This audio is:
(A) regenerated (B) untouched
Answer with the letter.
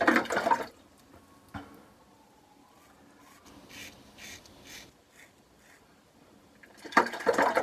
B